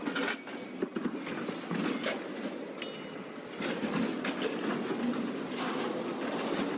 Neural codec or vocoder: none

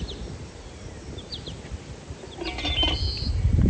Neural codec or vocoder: none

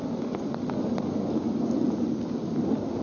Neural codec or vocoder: vocoder, BigVGAN v2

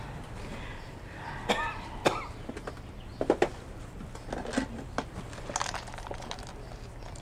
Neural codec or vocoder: none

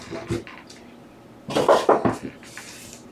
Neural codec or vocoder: none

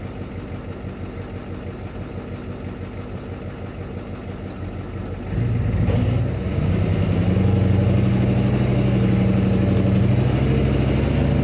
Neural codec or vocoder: none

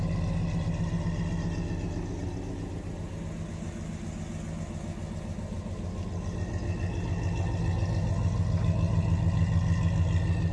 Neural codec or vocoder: none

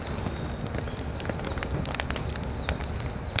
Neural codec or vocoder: none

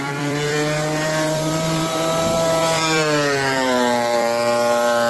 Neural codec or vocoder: vocoder, BigVGAN v2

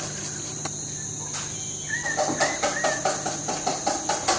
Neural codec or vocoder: none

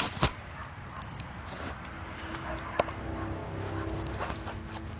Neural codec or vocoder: none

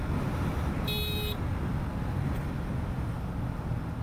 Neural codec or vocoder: none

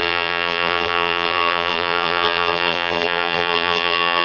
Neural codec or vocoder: vocoder, BigVGAN v2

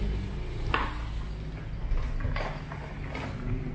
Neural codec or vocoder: none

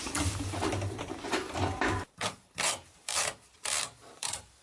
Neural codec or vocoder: vocoder, BigVGAN v2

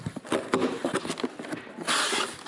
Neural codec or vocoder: none